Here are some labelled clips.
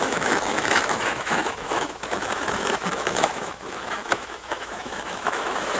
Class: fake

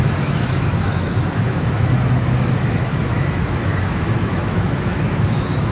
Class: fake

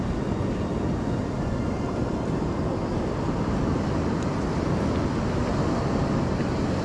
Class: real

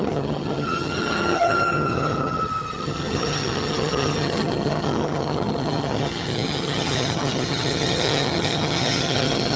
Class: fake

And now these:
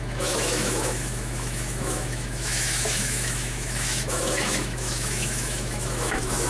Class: fake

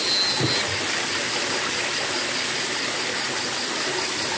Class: real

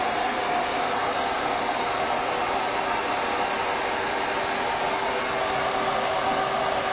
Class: real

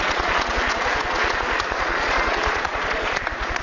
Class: fake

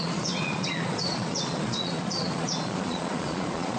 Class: fake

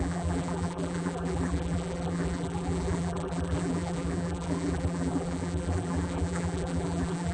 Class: fake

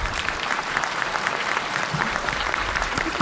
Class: fake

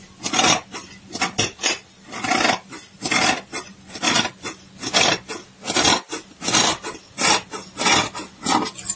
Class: real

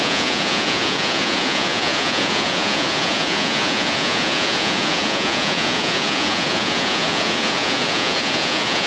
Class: fake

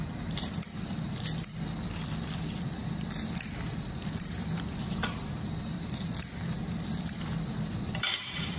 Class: fake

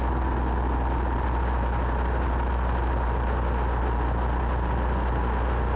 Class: real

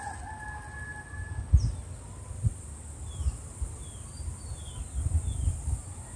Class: real